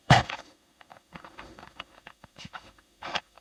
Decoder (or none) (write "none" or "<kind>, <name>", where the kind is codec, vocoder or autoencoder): autoencoder, DAC-VAE